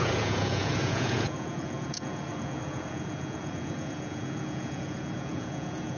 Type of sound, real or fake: fake